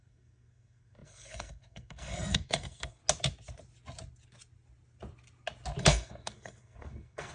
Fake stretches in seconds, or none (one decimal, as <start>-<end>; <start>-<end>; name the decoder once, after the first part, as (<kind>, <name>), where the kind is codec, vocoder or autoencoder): 0.0-3.0 (codec, SNAC); 5.8-7.3